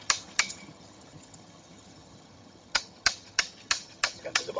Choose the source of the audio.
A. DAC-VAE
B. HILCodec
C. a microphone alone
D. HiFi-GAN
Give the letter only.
D